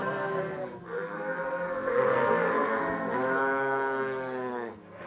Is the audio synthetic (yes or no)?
yes